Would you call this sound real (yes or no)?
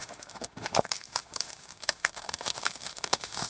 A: no